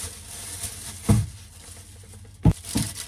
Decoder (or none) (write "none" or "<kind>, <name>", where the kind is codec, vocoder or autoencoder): none